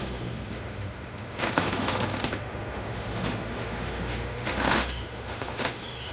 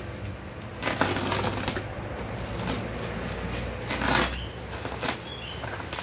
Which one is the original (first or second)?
second